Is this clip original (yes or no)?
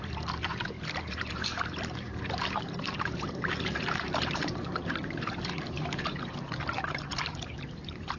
no